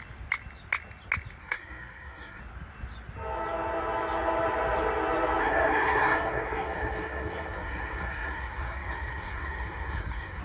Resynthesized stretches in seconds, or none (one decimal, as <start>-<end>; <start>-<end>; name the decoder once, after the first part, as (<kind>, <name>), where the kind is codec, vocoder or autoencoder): 1.4-2.4 (codec, SNAC); 5.4-10.4